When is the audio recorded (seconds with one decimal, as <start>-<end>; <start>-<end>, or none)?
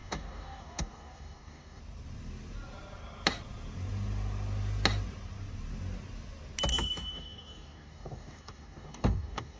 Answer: 1.8-6.7